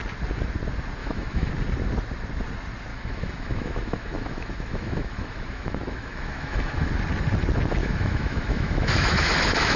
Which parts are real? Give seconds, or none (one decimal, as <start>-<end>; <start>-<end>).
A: 0.0-1.0; 1.5-2.9; 6.9-7.8